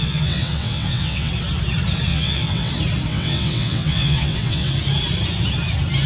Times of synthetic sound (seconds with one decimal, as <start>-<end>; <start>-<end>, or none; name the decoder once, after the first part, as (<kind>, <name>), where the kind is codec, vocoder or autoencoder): 0.0-1.3 (vocoder, WaveNeXt); 2.1-2.7; 3.1-4.7